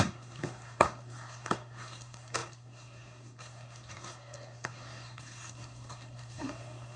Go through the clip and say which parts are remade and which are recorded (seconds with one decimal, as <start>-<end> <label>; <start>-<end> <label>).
0.0-7.0 remade